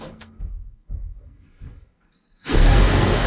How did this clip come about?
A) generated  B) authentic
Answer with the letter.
A